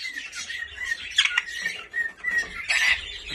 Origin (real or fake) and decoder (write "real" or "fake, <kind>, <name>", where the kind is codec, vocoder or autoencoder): fake, vocoder, BigVGAN v2